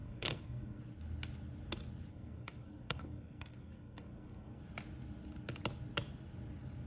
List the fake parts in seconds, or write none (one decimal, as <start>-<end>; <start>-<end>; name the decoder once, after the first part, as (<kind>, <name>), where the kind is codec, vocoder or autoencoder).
0.0-0.8 (codec, SNAC); 2.1-4.6